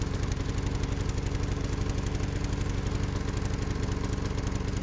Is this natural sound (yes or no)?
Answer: yes